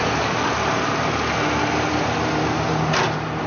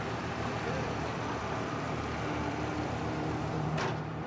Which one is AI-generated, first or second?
second